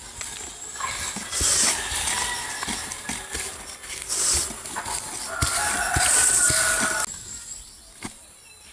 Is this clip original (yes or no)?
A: yes